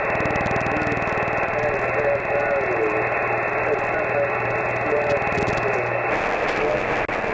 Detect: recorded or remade recorded